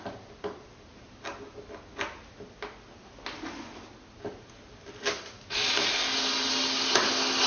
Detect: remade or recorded recorded